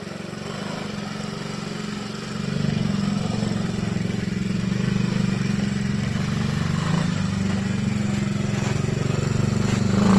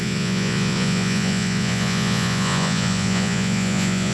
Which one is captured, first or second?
first